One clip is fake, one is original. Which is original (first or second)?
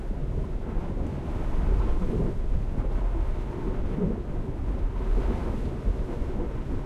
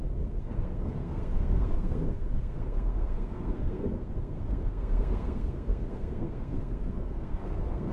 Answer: first